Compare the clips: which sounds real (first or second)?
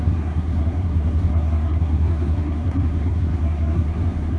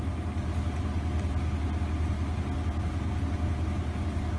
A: second